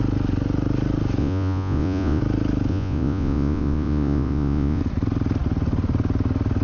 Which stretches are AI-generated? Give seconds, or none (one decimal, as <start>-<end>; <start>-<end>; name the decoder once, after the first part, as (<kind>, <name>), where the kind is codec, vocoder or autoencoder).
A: 1.2-2.2 (vocoder, Vocos); 2.7-4.8